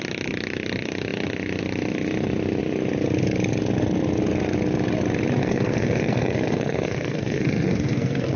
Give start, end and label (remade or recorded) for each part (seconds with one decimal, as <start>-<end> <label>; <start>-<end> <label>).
0.0-5.4 recorded; 5.4-8.4 remade